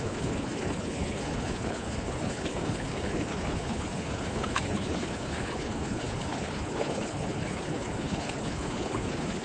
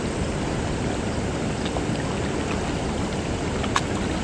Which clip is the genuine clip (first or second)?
second